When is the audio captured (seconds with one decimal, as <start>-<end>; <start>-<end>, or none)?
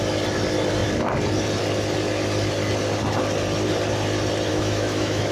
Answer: 0.0-4.5